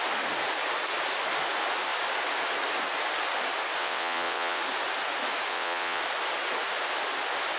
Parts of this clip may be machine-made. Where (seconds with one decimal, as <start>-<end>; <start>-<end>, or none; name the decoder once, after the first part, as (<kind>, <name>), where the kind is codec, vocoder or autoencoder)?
3.8-4.6 (vocoder, WaveNeXt); 5.5-6.0